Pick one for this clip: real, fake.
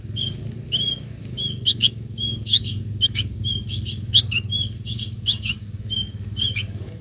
fake